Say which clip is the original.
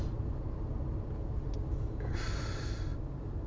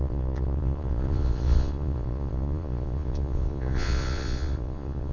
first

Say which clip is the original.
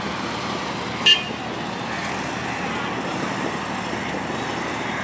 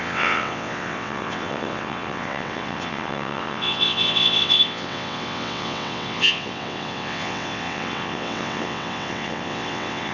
first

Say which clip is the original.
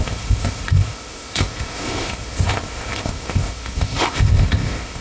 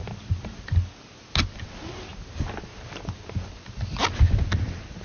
second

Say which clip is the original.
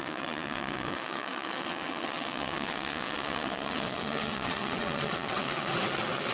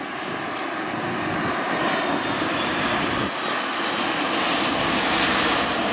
second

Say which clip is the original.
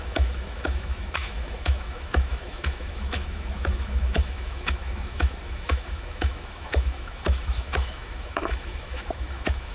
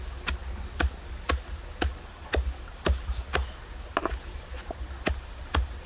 second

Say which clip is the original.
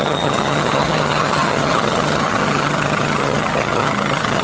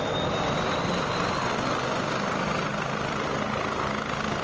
second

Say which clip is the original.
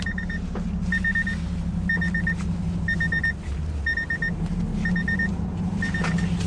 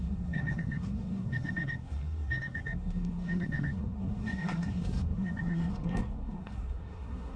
first